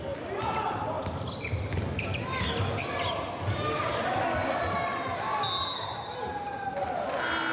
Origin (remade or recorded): recorded